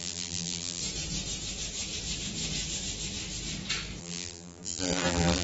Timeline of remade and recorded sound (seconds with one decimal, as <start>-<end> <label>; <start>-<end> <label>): 0.0-0.8 remade; 0.8-4.0 recorded; 4.0-5.4 remade